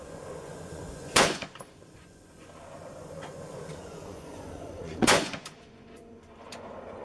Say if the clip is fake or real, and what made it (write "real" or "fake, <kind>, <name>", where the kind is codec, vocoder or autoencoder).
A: fake, vocoder, Vocos